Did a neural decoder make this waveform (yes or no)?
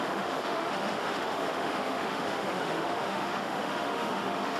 yes